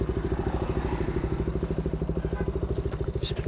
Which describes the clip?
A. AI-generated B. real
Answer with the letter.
B